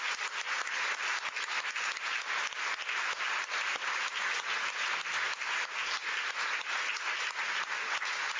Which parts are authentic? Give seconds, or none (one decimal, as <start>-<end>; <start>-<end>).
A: 0.0-8.4